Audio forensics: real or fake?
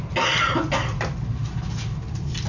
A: real